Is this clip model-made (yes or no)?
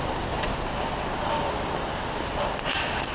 no